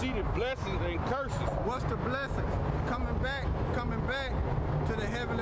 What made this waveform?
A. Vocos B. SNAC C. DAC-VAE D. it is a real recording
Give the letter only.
D